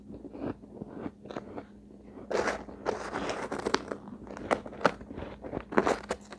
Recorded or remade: recorded